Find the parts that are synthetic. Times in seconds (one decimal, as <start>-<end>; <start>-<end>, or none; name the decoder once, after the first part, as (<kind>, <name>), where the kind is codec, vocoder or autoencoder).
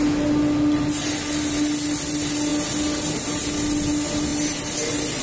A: none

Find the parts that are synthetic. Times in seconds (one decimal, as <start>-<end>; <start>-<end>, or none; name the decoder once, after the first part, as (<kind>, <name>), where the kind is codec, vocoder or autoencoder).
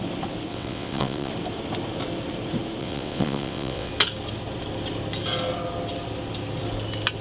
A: 0.5-1.3 (vocoder, WaveNeXt); 2.8-3.9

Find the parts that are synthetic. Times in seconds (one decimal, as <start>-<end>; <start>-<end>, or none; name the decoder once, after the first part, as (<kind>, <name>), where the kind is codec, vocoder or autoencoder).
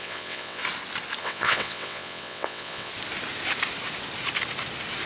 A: 0.0-0.6 (vocoder, WaveNeXt); 1.2-2.9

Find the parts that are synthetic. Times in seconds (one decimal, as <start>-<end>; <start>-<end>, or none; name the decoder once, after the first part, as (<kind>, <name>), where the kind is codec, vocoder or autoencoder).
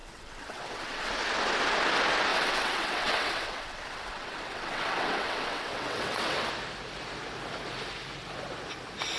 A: 0.0-1.1 (vocoder, WaveNeXt); 2.3-6.5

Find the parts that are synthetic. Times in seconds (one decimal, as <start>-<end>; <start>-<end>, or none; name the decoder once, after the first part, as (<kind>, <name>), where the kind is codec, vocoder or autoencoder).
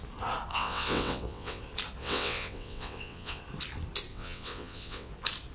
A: 0.5-1.6 (vocoder, WaveNeXt); 2.0-3.4; 4.1-5.1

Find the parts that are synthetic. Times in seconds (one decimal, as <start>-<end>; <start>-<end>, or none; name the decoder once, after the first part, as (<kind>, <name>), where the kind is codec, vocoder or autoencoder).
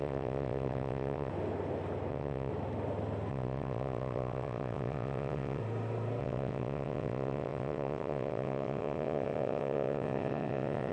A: 0.0-1.3 (vocoder, WaveNeXt); 2.1-2.5; 3.3-5.6; 6.2-10.9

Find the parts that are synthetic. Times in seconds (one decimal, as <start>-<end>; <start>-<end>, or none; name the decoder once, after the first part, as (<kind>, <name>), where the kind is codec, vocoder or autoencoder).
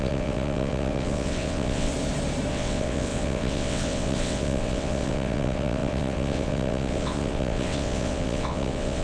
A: 0.0-1.9 (vocoder, WaveNeXt); 2.5-9.0